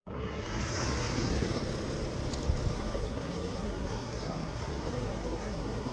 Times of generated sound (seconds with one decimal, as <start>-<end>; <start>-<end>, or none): 0.0-1.6; 2.7-5.9